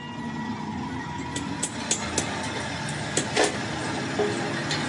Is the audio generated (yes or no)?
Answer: no